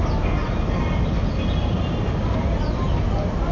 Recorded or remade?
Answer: recorded